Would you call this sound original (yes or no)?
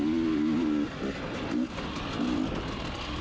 yes